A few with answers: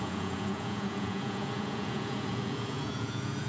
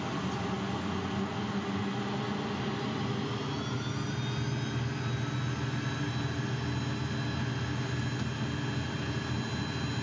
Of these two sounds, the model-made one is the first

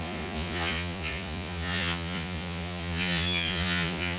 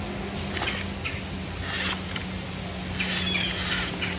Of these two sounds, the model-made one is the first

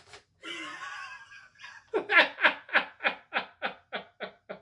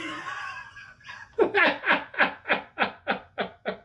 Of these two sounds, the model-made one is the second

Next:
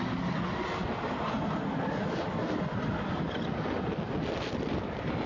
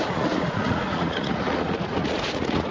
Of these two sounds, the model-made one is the second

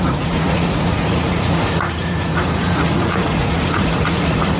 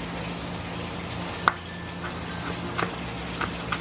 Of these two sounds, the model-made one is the first